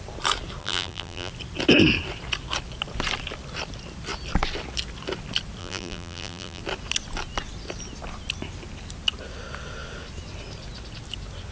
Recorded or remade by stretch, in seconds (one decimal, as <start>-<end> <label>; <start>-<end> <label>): 0.0-0.6 recorded; 0.6-1.3 remade; 1.3-5.6 recorded; 5.6-6.6 remade; 6.6-11.5 recorded